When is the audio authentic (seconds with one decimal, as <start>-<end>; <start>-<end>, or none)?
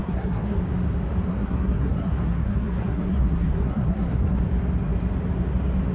0.6-1.3; 4.4-5.9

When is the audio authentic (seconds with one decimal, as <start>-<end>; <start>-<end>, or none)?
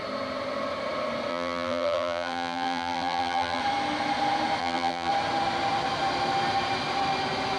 0.0-1.3; 3.6-4.6; 5.1-7.6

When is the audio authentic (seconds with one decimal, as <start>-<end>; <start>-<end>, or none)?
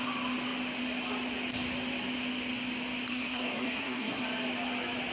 0.0-3.1; 4.2-5.1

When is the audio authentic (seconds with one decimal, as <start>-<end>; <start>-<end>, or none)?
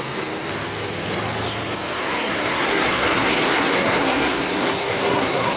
0.0-2.0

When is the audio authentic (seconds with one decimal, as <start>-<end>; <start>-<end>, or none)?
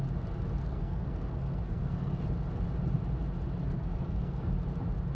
0.0-0.6; 2.2-3.6; 4.5-5.1